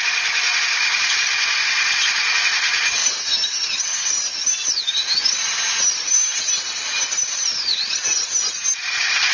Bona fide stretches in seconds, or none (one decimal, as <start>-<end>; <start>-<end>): 0.0-9.3